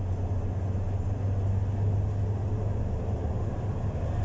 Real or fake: real